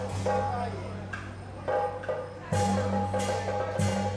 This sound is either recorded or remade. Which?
recorded